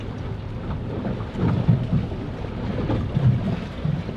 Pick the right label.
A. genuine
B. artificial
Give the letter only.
A